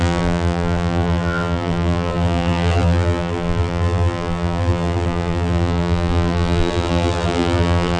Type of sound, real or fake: fake